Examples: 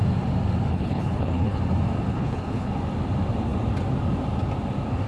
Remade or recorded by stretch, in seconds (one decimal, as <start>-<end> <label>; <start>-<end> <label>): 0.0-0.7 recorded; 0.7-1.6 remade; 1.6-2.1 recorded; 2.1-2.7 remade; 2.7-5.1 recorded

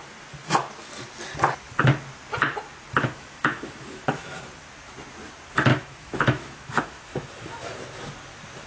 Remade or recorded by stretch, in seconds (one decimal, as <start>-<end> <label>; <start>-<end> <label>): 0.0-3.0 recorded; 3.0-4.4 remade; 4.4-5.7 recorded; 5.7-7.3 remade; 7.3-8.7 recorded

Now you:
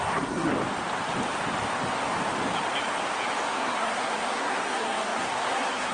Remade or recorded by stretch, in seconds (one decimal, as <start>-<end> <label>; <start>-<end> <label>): 0.0-0.5 remade; 0.5-3.5 recorded; 3.5-5.9 remade

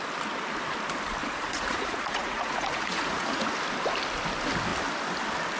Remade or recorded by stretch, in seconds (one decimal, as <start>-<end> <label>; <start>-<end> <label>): 0.0-1.2 recorded; 1.2-3.5 remade; 3.5-5.6 recorded

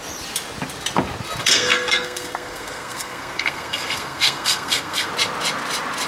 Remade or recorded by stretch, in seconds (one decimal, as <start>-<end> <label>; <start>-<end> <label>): 0.0-1.4 recorded; 1.4-5.1 remade; 5.1-6.1 recorded

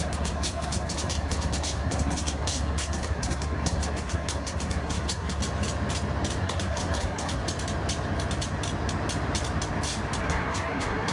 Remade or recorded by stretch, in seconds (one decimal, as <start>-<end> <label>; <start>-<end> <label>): 0.0-5.4 remade; 5.4-6.4 recorded; 6.4-7.4 remade; 7.4-10.2 recorded; 10.2-11.1 remade